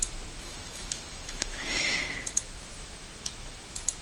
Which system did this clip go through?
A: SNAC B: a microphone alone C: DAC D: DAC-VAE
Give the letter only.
D